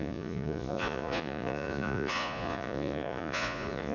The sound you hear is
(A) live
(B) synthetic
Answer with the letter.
B